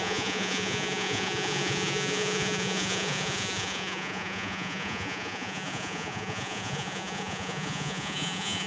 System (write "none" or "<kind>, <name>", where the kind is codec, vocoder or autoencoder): vocoder, Vocos